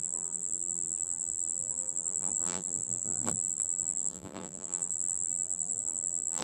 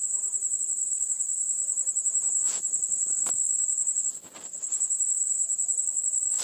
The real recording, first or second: second